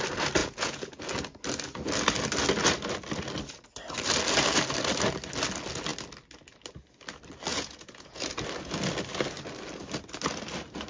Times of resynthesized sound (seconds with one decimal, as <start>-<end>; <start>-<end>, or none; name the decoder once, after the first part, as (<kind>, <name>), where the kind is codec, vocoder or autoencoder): 0.4-1.0 (vocoder, Vocos); 7.5-8.2